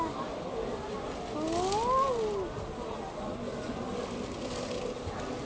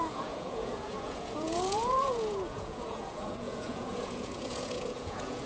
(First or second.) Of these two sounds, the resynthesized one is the second